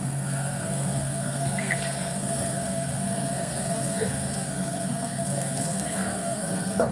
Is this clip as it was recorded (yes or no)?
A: no